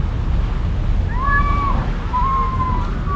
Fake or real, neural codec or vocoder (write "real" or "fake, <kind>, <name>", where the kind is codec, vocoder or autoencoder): real